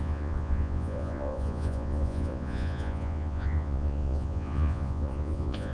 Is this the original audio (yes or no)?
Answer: no